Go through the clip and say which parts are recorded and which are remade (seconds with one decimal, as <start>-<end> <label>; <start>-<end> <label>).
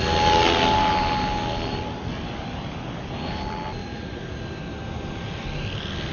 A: 0.0-3.8 recorded; 3.8-4.4 remade; 4.4-6.1 recorded